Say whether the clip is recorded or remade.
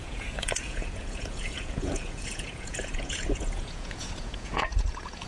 remade